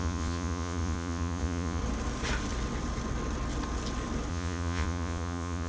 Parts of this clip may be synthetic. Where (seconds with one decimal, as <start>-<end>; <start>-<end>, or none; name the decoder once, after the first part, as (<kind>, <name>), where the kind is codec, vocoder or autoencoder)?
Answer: 0.0-1.8 (vocoder, Vocos); 4.3-5.7